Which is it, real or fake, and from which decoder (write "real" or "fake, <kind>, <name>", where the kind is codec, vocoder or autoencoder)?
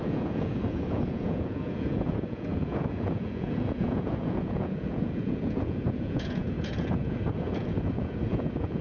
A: fake, vocoder, Vocos